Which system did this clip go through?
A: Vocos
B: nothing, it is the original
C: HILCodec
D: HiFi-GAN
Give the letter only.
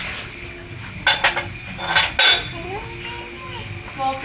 B